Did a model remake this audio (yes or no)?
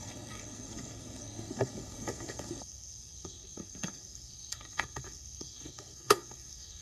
yes